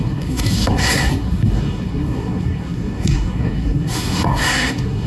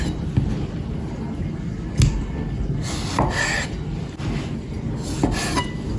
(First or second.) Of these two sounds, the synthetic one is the first